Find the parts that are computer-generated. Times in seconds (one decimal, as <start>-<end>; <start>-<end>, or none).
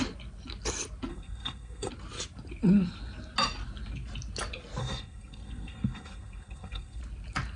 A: 1.1-1.9; 4.8-7.0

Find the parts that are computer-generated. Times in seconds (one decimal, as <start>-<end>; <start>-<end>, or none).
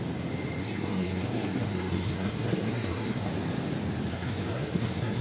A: 0.6-3.3; 4.1-5.2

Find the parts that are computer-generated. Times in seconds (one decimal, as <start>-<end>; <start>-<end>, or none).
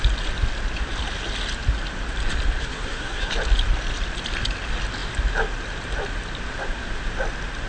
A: 2.6-3.3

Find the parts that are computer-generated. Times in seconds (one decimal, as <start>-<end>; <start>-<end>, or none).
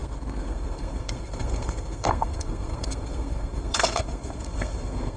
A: 0.0-5.2